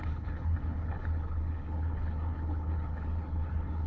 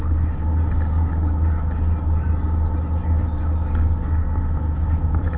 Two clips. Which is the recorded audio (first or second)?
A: second